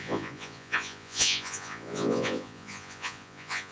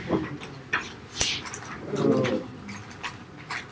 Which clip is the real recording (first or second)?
second